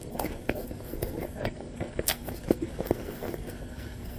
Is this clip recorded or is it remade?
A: remade